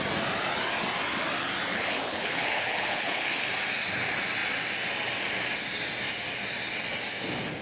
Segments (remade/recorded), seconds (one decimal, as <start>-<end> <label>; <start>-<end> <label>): 0.0-1.7 recorded; 1.7-3.5 remade; 3.5-7.6 recorded